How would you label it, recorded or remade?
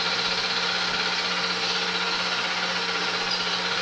recorded